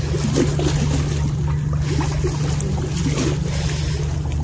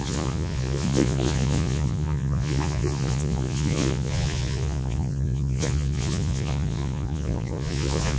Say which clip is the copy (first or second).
second